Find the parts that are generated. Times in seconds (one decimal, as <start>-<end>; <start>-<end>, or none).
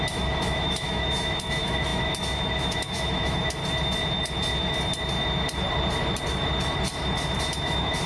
0.0-3.6; 7.6-8.1